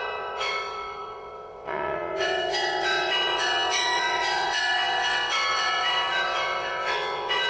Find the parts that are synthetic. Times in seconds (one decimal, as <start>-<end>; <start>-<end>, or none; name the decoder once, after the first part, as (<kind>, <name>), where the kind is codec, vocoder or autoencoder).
0.0-7.5 (vocoder, WaveNeXt)